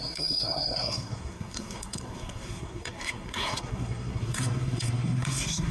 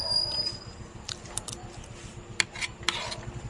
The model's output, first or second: first